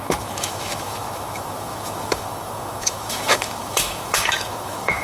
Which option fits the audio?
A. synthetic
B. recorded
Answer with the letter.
A